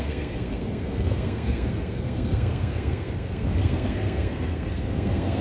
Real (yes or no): no